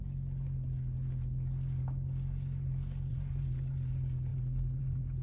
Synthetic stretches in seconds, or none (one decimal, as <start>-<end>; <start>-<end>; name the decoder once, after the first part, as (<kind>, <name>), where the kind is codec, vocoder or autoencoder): 3.1-5.2 (vocoder, BigVGAN v2)